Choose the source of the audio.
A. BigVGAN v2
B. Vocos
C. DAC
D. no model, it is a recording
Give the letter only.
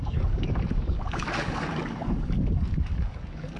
C